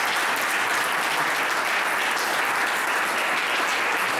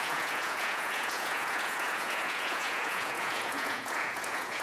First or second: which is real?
first